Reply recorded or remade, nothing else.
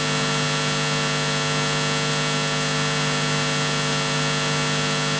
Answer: recorded